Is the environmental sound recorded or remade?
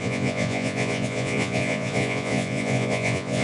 remade